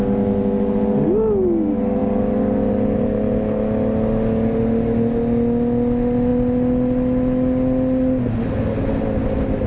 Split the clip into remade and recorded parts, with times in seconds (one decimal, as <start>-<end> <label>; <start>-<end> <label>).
0.0-9.7 recorded